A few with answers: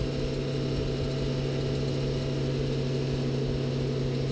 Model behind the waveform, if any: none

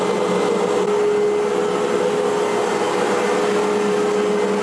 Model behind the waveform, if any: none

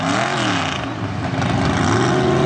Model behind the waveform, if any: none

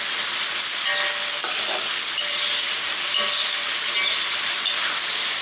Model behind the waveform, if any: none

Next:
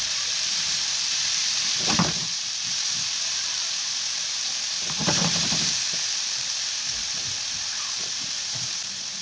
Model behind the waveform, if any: vocoder, BigVGAN v2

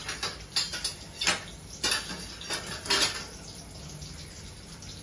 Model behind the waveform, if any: none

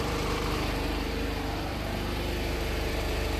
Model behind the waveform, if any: vocoder, BigVGAN v2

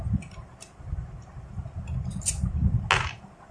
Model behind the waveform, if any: none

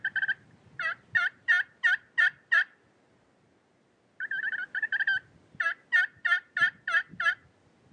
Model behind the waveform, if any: none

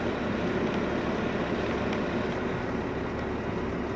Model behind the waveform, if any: none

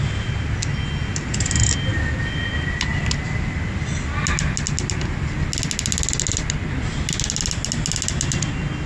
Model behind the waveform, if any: none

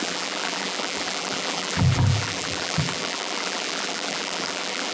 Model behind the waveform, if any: vocoder, BigVGAN v2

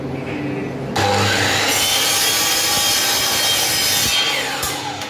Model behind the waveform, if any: none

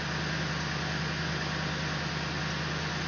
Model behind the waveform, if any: none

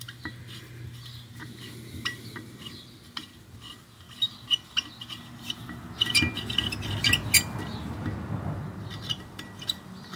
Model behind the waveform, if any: none